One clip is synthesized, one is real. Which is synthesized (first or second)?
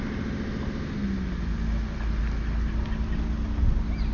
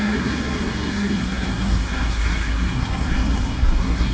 second